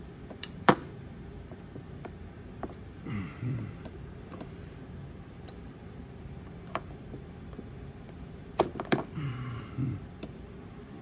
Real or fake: fake